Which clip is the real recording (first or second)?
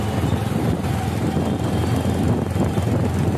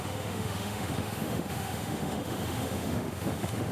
first